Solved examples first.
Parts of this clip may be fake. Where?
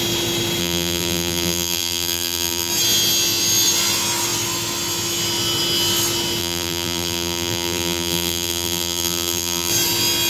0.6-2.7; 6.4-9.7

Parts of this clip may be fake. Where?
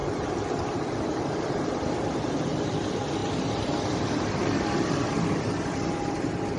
0.0-6.6